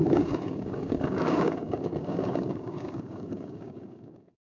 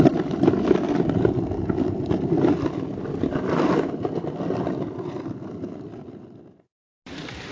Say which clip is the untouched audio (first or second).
second